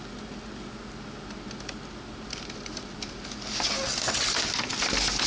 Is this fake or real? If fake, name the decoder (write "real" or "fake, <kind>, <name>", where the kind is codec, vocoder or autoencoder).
real